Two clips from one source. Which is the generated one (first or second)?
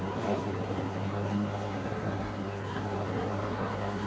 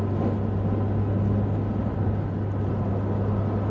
first